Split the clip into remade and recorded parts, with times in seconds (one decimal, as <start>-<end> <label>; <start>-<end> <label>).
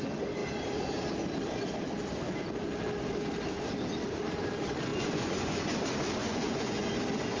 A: 0.0-4.9 recorded; 4.9-5.8 remade; 5.8-6.2 recorded; 6.2-6.9 remade; 6.9-7.4 recorded